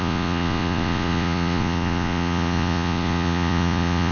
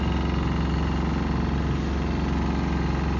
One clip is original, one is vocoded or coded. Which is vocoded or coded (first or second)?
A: first